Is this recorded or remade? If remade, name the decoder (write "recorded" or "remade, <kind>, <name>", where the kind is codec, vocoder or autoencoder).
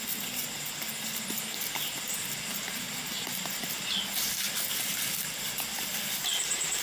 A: recorded